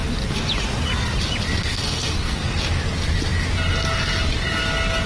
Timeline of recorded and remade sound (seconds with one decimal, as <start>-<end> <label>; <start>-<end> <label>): 0.0-1.6 recorded; 1.6-2.5 remade; 2.5-5.1 recorded